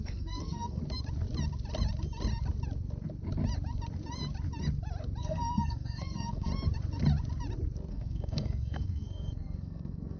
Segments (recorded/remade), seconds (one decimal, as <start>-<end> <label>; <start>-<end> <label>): 0.0-0.8 remade; 0.8-5.2 recorded; 5.2-6.5 remade; 6.5-7.9 recorded; 7.9-10.2 remade